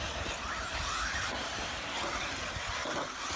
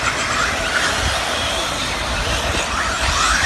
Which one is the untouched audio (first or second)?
second